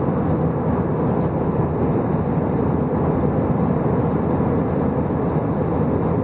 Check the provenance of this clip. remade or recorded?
recorded